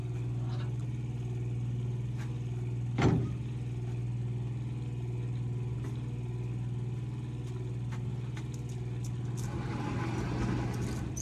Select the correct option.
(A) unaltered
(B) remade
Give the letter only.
A